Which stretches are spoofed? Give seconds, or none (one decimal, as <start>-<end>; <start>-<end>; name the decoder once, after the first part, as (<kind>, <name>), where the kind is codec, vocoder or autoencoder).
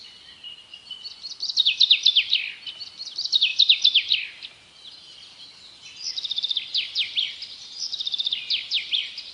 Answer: none